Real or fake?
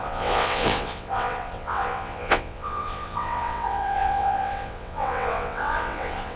fake